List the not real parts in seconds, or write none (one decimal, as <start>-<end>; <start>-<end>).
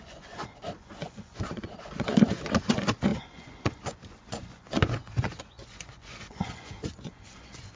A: 0.0-7.8